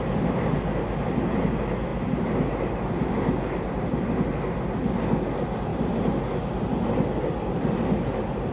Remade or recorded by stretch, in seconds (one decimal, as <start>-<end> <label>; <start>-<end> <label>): 0.0-8.5 recorded